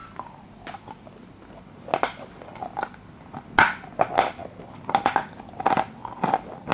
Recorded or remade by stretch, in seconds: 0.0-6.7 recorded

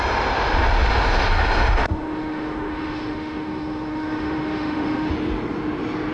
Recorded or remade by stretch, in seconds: 0.0-1.8 recorded; 1.8-5.1 remade; 5.1-6.1 recorded

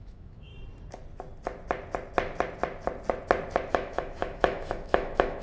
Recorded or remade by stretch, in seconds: 0.0-0.5 remade; 0.5-3.7 recorded; 3.7-5.4 remade

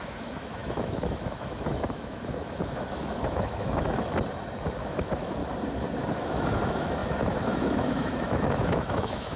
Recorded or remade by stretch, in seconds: 0.0-4.1 remade; 4.1-4.8 recorded; 4.8-5.4 remade; 5.4-6.1 recorded; 6.1-9.4 remade

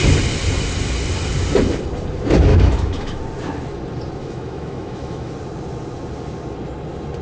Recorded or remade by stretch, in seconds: 0.0-2.5 recorded; 2.5-3.2 remade; 3.2-4.2 recorded; 4.2-5.3 remade; 5.3-7.2 recorded

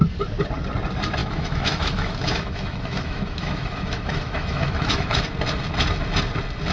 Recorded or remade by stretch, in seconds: 0.0-1.2 recorded; 1.2-5.2 remade; 5.2-6.7 recorded

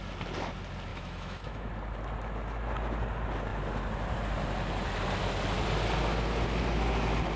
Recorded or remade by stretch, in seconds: 0.0-0.9 recorded; 0.9-1.7 remade; 1.7-7.4 recorded